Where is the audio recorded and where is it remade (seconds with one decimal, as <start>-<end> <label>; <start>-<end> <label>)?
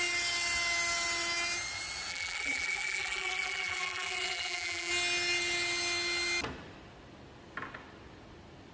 0.0-2.1 recorded; 2.1-4.9 remade; 4.9-8.7 recorded